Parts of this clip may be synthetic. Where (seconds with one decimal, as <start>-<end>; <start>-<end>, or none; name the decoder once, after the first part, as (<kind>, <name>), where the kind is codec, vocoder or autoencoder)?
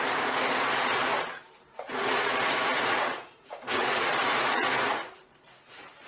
0.0-1.0 (vocoder, Vocos); 1.7-6.1